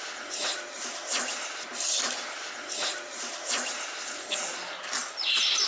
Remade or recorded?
recorded